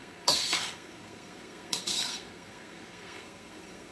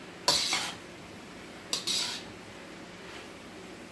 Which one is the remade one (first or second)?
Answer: first